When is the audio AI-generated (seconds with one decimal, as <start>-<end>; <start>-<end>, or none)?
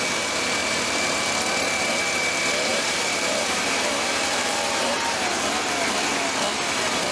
0.6-1.3; 2.7-5.3